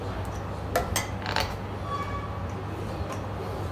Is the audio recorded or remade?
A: recorded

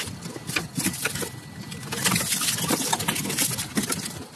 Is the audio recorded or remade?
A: recorded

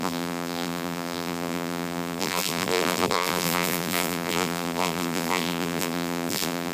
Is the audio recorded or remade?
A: remade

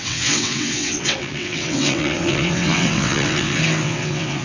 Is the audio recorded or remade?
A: remade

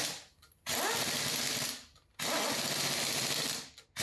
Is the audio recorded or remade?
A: recorded